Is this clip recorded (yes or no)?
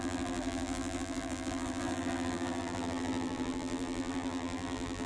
no